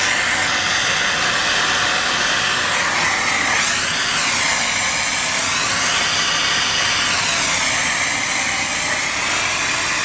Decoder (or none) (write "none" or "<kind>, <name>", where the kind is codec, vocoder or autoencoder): none